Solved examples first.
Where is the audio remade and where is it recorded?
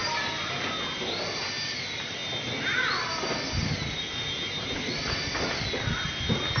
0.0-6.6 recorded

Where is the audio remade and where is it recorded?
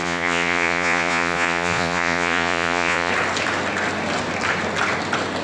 0.0-3.1 remade; 3.1-5.4 recorded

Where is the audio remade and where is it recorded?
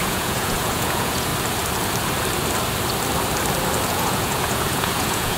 0.0-1.3 remade; 1.3-3.9 recorded; 3.9-5.4 remade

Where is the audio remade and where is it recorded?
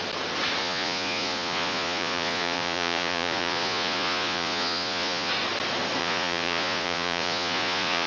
0.0-0.6 recorded; 0.6-5.3 remade; 5.3-6.0 recorded; 6.0-8.1 remade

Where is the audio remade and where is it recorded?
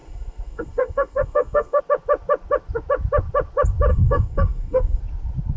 0.0-1.8 remade; 1.8-3.9 recorded; 3.9-5.0 remade; 5.0-5.6 recorded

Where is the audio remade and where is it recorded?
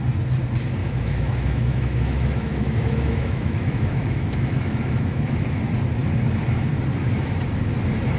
0.0-0.8 recorded; 0.8-5.6 remade; 5.6-8.2 recorded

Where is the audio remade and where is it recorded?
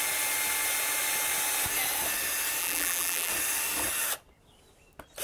0.0-2.6 recorded; 2.6-3.3 remade; 3.3-5.2 recorded